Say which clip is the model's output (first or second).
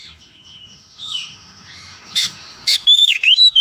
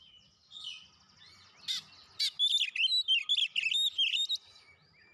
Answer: first